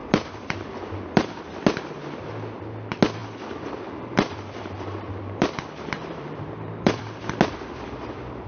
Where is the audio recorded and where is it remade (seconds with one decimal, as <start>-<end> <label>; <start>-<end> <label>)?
0.0-1.6 remade; 1.6-3.2 recorded; 3.2-7.4 remade; 7.4-8.5 recorded

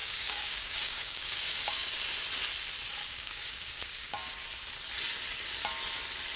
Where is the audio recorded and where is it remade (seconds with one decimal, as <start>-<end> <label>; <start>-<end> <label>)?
0.0-1.9 remade; 1.9-3.0 recorded; 3.0-4.3 remade; 4.3-6.4 recorded